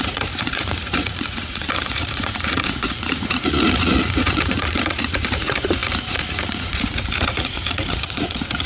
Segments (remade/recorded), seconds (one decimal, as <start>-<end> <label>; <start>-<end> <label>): 0.0-8.7 remade